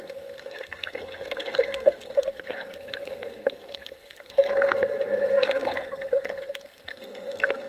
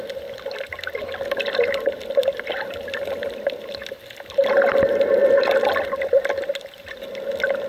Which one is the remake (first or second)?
first